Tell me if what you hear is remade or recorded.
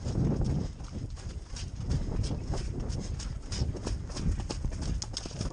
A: recorded